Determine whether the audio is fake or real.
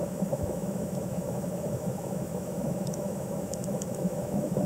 fake